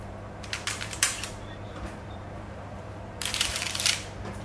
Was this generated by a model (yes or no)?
yes